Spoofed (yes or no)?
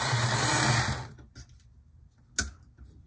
no